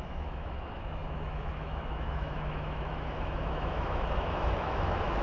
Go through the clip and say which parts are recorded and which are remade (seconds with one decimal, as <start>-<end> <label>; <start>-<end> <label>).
0.0-5.2 remade